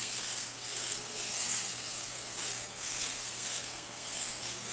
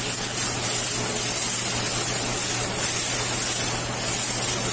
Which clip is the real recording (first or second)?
second